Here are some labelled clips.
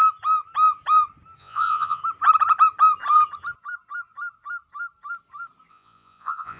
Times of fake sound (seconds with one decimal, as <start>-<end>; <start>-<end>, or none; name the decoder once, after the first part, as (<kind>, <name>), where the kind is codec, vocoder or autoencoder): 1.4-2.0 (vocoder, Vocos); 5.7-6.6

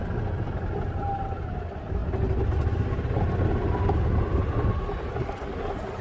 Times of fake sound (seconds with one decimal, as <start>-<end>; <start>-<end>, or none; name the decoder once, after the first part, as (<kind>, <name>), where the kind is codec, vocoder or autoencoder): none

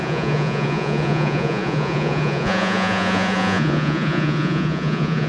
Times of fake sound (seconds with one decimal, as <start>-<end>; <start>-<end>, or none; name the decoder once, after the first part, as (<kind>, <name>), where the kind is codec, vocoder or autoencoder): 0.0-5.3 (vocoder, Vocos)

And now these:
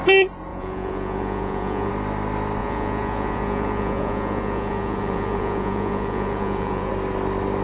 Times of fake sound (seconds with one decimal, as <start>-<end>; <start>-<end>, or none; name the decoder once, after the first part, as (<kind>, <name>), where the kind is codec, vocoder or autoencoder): 0.5-1.9 (vocoder, Vocos); 2.6-6.9

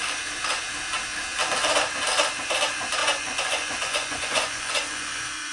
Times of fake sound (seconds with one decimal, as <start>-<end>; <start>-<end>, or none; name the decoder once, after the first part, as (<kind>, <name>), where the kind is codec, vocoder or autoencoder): 3.0-5.5 (vocoder, Vocos)

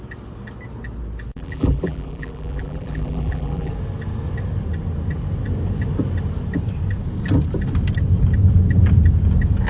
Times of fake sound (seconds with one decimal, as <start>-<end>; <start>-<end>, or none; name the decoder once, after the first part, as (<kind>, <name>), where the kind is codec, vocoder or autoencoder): 1.3-3.7 (vocoder, BigVGAN v2)

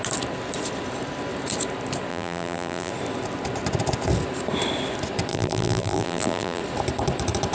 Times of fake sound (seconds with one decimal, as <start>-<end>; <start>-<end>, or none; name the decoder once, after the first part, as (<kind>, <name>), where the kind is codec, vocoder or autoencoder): 2.1-2.9 (vocoder, BigVGAN v2); 5.3-6.6